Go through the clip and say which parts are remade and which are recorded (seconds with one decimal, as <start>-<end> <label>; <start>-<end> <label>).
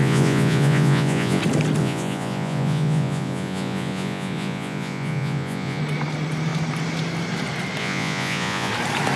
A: 0.0-1.4 remade; 1.4-1.8 recorded; 1.8-5.8 remade; 5.8-7.8 recorded; 7.8-8.7 remade; 8.7-9.2 recorded